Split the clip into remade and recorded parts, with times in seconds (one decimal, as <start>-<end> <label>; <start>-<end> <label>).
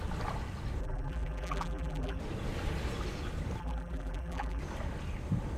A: 0.0-0.8 recorded; 0.8-2.2 remade; 2.2-3.6 recorded; 3.6-4.6 remade; 4.6-5.6 recorded